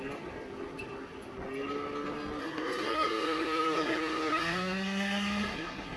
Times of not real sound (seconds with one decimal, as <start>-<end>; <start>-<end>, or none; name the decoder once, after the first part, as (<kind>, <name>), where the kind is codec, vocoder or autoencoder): 2.4-6.0 (codec, SNAC)